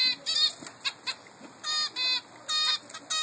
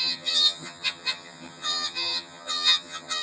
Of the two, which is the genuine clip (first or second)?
first